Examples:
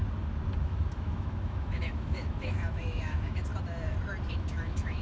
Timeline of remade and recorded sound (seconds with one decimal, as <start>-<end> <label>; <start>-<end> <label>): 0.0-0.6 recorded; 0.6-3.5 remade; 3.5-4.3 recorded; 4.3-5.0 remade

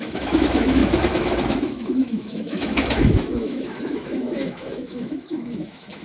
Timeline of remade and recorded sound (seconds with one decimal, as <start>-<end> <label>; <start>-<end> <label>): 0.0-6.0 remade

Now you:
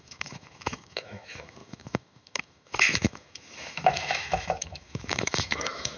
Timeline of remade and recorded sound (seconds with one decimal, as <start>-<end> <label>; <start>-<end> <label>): 0.0-6.0 remade

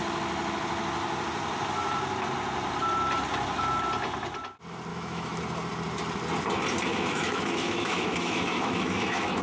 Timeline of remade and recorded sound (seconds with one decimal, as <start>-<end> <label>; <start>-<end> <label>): 0.0-4.9 recorded; 4.9-5.4 remade; 5.4-6.9 recorded; 6.9-9.4 remade

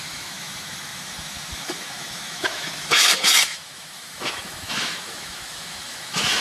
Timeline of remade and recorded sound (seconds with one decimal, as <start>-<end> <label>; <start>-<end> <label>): 0.0-6.4 remade

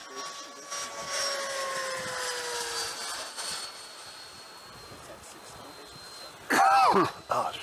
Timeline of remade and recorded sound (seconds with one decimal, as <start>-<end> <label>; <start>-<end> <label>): 0.0-7.6 recorded

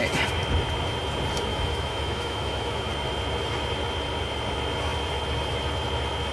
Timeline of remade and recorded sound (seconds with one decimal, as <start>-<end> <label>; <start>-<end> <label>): 0.0-1.5 recorded; 1.5-2.9 remade; 2.9-6.3 recorded

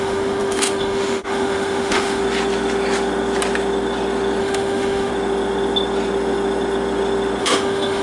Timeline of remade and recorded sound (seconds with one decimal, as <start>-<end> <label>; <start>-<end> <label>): 0.0-2.2 remade; 2.2-4.4 recorded; 4.4-5.1 remade; 5.1-7.4 recorded; 7.4-8.0 remade